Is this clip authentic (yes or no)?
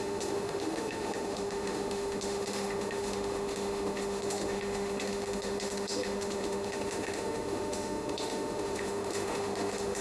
no